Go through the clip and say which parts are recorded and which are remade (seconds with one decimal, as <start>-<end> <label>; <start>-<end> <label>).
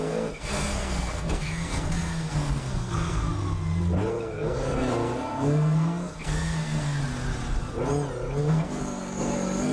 0.0-3.3 remade; 3.3-4.1 recorded; 4.1-7.0 remade; 7.0-8.4 recorded; 8.4-9.7 remade